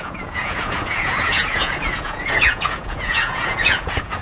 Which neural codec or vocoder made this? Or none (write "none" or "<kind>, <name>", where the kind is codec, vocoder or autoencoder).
vocoder, Vocos